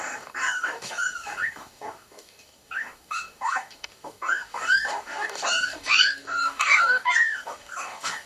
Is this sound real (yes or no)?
no